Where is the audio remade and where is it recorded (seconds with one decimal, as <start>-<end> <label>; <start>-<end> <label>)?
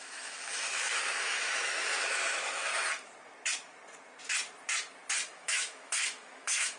0.0-2.8 remade; 2.8-5.3 recorded; 5.3-6.8 remade